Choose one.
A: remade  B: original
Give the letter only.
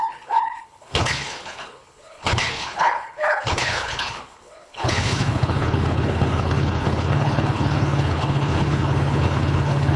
A